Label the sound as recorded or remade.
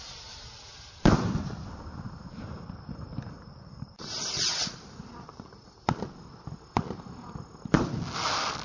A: recorded